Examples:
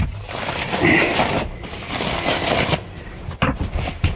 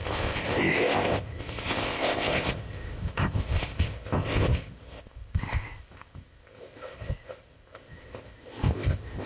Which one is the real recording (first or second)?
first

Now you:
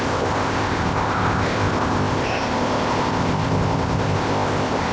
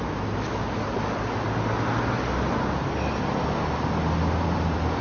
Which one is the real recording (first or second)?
second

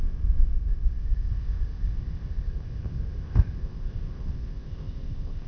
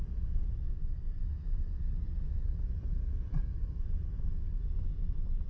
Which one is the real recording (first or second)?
second